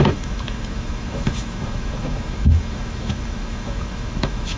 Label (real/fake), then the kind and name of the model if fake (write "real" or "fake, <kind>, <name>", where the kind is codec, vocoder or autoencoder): fake, autoencoder, DAC-VAE